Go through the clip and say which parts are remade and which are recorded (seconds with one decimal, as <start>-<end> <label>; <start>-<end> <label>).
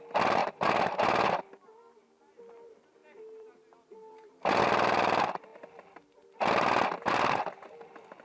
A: 0.0-0.4 recorded; 0.4-1.4 remade; 1.4-3.0 recorded; 3.0-4.6 remade; 4.6-8.2 recorded